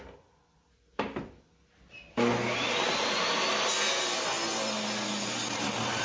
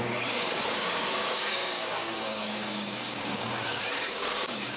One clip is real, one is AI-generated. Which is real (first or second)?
first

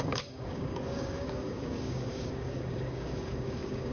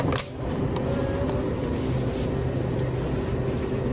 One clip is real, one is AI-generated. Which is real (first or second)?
second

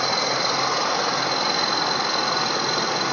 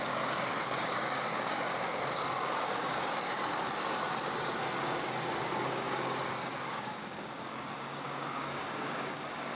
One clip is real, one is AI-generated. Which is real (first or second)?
first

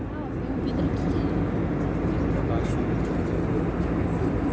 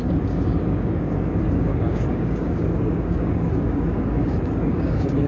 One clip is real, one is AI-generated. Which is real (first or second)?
first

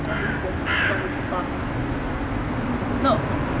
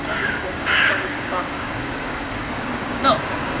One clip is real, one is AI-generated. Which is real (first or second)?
first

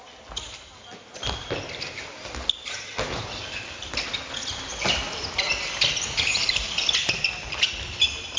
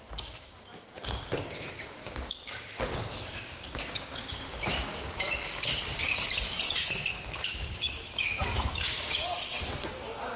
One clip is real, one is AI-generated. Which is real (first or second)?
first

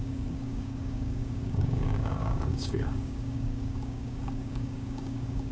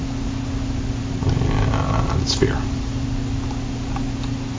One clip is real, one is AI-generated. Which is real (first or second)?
second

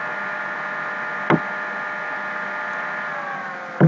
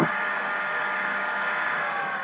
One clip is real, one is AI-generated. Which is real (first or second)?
first